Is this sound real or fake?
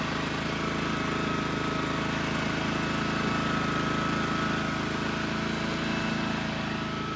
real